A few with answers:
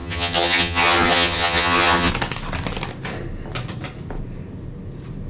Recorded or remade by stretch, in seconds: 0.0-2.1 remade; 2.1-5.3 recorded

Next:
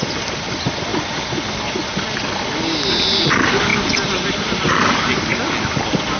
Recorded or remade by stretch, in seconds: 0.0-6.2 recorded

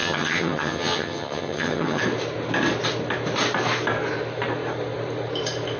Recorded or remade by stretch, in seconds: 0.0-2.0 remade; 2.0-5.8 recorded